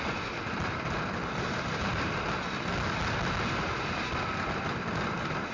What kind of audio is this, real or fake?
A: real